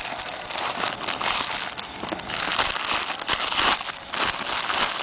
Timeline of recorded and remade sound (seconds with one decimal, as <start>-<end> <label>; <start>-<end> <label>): 0.0-5.0 recorded